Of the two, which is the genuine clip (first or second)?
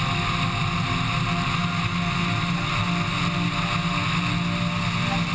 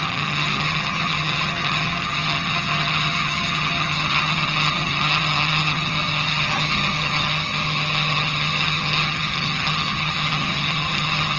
first